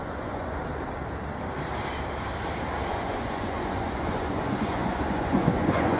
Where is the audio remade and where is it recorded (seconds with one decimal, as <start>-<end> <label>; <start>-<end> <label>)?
0.0-0.6 remade; 0.6-2.9 recorded; 2.9-6.0 remade